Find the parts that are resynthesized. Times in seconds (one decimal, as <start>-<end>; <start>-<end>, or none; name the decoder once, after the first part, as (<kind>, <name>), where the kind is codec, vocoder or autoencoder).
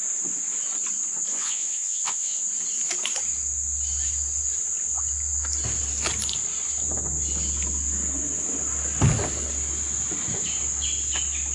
1.3-2.4 (vocoder, Vocos)